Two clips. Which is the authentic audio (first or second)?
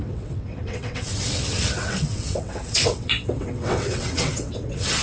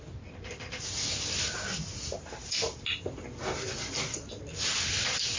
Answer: second